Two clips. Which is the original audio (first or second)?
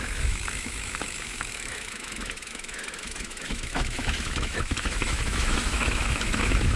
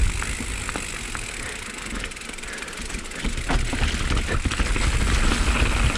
second